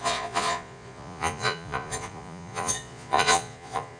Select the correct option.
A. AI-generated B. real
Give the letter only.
A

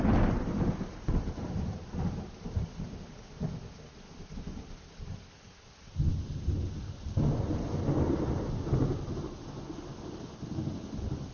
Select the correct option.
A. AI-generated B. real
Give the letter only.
B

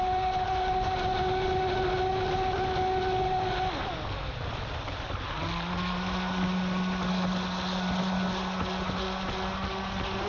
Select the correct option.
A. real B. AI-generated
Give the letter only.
A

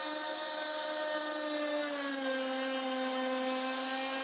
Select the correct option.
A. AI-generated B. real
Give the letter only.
B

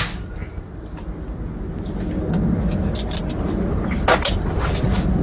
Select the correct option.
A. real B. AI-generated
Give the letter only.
A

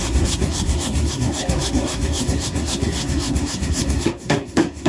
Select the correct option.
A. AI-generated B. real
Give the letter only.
A